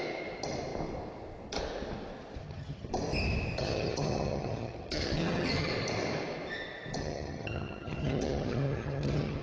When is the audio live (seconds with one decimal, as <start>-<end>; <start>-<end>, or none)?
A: 0.0-2.4; 2.9-3.6; 5.7-7.0